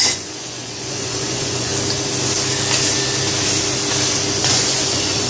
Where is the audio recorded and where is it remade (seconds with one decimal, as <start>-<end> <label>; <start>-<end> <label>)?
0.0-1.7 remade; 1.7-4.4 recorded; 4.4-5.3 remade